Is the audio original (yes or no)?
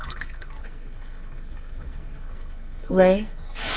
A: no